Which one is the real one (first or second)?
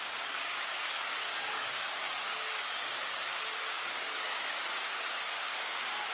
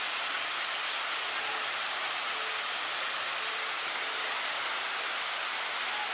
second